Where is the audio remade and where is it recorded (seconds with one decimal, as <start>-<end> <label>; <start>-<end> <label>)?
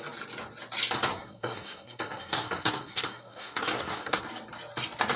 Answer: 0.0-1.1 recorded; 1.1-4.2 remade; 4.2-5.2 recorded